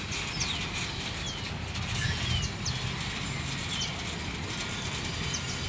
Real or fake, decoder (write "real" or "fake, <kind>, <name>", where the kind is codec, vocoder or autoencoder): real